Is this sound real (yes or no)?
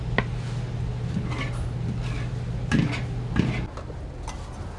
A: yes